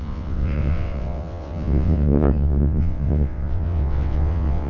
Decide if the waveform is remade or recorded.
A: remade